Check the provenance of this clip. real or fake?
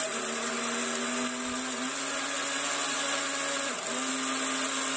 real